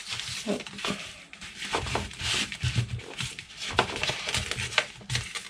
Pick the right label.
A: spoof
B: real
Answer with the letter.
B